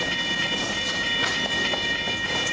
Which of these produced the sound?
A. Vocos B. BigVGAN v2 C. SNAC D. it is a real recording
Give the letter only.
D